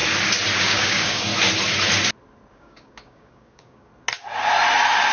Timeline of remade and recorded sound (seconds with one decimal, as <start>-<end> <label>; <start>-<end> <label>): 0.0-0.6 recorded; 0.6-1.3 remade; 1.3-2.5 recorded; 2.5-3.9 remade; 3.9-5.1 recorded